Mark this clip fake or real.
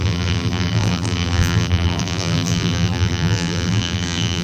fake